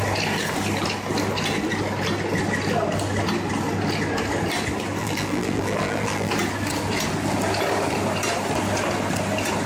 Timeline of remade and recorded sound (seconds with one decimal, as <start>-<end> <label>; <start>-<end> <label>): 0.0-5.0 recorded; 5.0-6.3 remade; 6.3-9.7 recorded